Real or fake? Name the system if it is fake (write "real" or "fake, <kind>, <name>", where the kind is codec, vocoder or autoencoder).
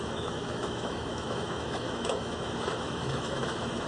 fake, autoencoder, DAC-VAE